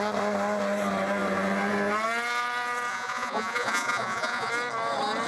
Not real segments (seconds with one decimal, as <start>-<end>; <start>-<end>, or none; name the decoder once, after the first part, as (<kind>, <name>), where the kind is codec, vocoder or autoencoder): 2.9-4.5 (vocoder, Vocos)